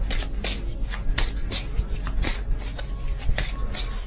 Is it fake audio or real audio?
real